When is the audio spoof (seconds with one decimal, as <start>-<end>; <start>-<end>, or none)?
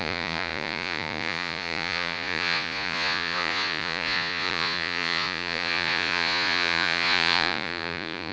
0.0-8.3